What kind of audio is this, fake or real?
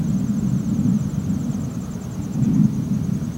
real